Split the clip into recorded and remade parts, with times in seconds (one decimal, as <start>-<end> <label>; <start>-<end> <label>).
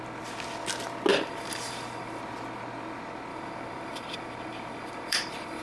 0.0-1.1 recorded; 1.1-2.2 remade; 2.2-3.3 recorded; 3.3-5.6 remade